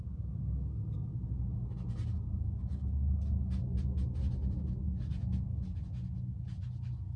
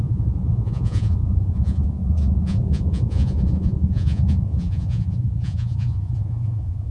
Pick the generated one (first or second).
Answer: second